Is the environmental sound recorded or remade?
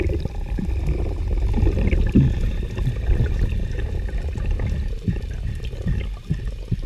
recorded